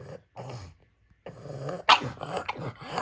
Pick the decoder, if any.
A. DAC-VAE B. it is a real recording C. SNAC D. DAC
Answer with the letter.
B